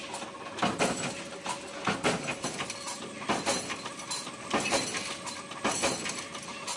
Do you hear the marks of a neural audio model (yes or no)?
no